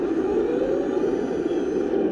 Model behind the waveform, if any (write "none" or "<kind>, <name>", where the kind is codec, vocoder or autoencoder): none